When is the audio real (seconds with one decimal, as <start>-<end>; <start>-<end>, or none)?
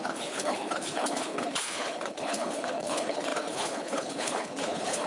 none